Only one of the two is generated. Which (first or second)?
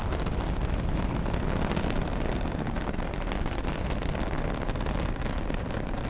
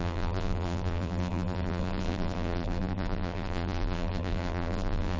second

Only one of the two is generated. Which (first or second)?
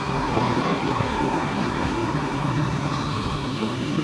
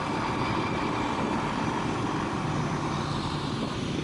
first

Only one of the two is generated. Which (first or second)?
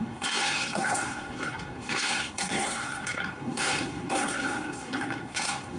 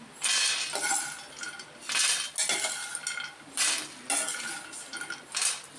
first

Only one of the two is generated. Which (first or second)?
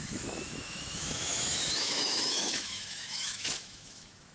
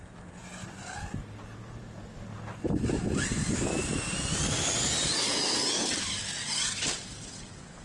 first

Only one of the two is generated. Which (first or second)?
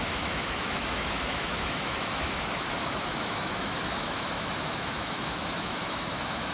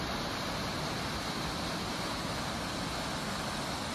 first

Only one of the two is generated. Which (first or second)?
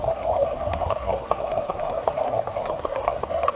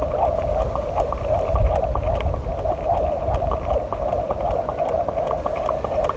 first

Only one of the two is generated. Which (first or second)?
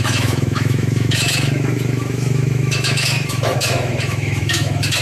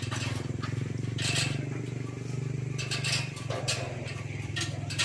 first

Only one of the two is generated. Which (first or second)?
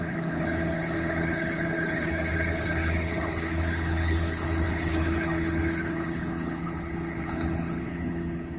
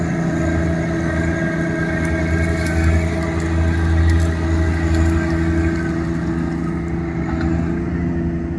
first